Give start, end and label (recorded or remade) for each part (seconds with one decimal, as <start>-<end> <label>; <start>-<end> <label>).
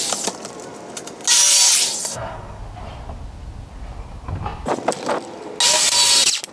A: 0.0-2.0 recorded; 2.0-2.6 remade; 2.6-6.5 recorded